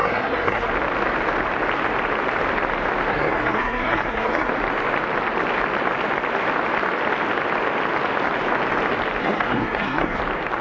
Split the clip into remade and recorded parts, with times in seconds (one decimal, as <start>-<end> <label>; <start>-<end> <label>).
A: 0.0-0.7 remade; 0.7-3.1 recorded; 3.1-4.5 remade; 4.5-9.2 recorded; 9.2-10.2 remade; 10.2-10.6 recorded